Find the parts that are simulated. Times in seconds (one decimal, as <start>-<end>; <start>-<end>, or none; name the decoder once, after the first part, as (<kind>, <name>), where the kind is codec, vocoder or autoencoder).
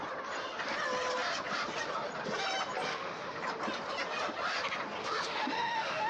2.9-3.4 (autoencoder, DAC-VAE); 5.0-6.1